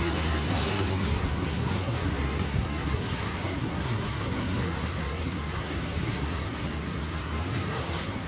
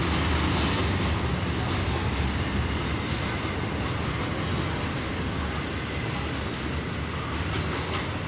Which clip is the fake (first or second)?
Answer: first